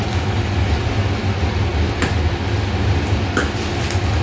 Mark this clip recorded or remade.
recorded